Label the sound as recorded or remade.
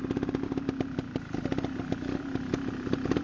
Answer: recorded